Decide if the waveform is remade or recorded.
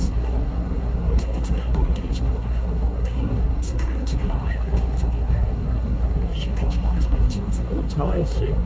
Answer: remade